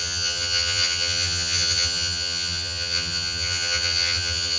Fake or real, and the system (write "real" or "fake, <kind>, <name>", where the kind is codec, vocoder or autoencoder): fake, vocoder, HiFi-GAN